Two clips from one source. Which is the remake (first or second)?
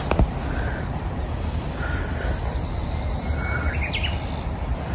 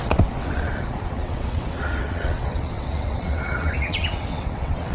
second